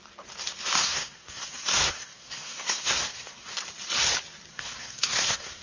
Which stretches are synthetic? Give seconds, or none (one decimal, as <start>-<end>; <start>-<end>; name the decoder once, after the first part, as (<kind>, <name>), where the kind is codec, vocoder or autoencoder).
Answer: 0.8-3.5 (codec, SNAC); 4.5-5.6